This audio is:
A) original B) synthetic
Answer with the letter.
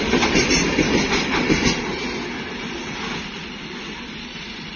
A